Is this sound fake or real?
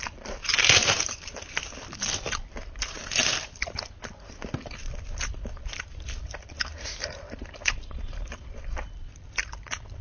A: fake